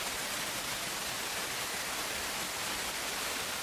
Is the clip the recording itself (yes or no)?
yes